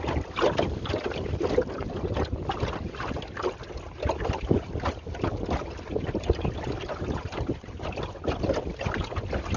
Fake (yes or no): no